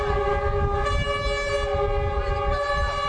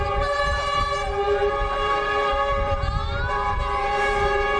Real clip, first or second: first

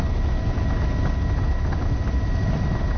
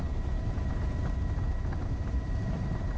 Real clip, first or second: first